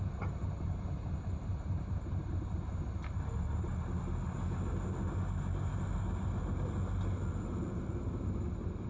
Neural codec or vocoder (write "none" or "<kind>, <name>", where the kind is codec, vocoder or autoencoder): none